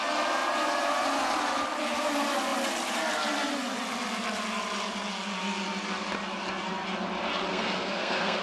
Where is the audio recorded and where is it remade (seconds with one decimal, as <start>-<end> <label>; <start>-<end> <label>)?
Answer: 0.0-7.5 recorded; 7.5-8.4 remade